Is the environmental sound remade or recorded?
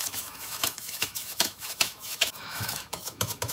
remade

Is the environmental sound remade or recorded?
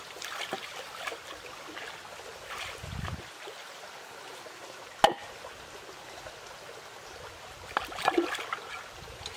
recorded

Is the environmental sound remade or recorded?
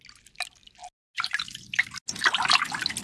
recorded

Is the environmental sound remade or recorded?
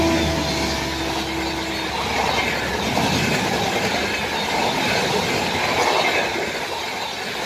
recorded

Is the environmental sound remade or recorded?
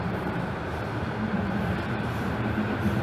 remade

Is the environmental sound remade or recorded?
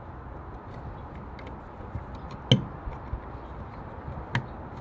recorded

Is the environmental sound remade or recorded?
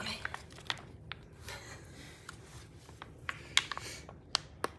recorded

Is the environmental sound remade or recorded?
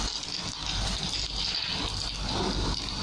recorded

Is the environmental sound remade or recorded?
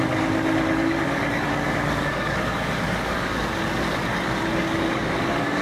remade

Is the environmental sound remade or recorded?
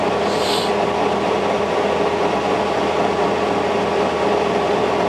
recorded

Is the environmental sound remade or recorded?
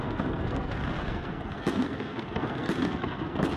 remade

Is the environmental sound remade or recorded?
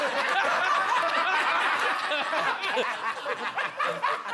recorded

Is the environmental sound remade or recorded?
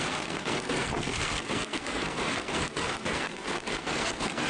remade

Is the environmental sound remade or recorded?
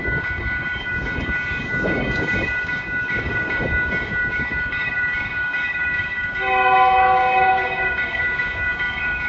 remade